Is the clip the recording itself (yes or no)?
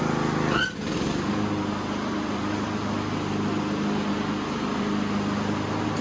yes